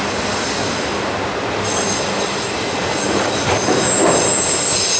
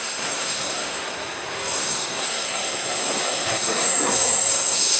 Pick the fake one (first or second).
second